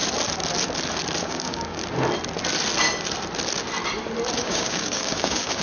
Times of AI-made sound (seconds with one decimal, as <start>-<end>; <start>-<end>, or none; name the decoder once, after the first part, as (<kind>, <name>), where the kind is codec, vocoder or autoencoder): 1.2-1.8 (codec, DAC); 4.4-5.6

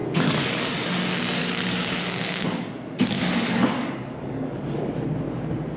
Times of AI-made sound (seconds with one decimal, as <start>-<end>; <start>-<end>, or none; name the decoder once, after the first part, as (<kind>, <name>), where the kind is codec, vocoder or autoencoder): 0.0-0.9 (codec, DAC); 1.4-4.9

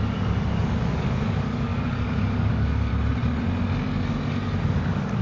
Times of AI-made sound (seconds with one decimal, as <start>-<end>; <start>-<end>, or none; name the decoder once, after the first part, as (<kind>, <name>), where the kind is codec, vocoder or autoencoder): 0.0-2.9 (codec, DAC); 4.7-5.2

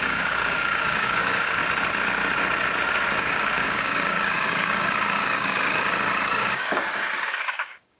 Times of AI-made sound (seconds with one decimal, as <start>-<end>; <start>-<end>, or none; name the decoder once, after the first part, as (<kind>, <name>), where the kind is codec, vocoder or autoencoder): 0.0-1.6 (codec, DAC); 3.2-8.0

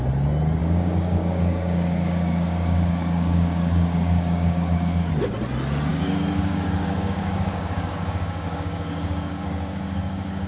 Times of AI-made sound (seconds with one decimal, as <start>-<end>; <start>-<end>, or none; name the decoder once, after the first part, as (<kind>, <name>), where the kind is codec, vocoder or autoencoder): 0.6-5.1 (codec, DAC); 5.9-10.5

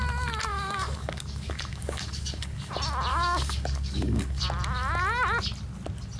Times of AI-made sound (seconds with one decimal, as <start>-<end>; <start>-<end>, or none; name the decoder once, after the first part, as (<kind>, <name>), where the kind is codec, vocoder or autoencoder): 0.5-2.7 (codec, DAC); 3.1-4.4